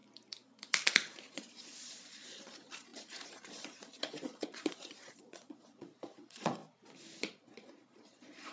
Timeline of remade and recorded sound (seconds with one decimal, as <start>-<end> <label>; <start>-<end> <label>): 0.0-1.3 recorded; 1.3-6.6 remade; 6.6-7.2 recorded; 7.2-8.5 remade